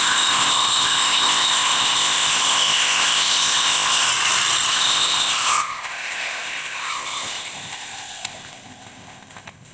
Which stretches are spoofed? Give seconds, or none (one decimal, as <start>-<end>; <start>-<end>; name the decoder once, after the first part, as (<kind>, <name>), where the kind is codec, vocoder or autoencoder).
0.0-4.1 (codec, ZipCodec); 4.7-9.7